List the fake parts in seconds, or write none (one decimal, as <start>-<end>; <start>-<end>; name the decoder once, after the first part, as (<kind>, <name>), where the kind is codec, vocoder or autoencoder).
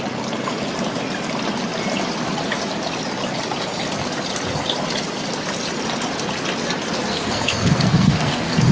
7.1-8.7 (codec, SNAC)